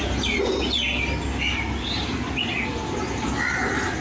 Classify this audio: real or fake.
real